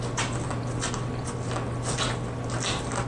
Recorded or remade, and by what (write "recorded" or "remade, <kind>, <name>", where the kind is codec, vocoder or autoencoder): recorded